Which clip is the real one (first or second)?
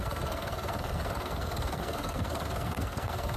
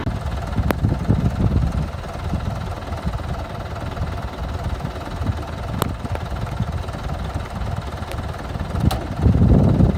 second